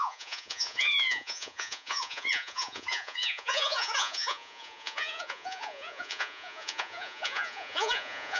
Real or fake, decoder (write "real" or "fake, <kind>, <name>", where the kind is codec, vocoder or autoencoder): fake, vocoder, Vocos